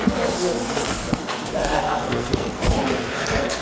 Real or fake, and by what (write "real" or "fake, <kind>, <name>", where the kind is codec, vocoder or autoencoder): fake, codec, SNAC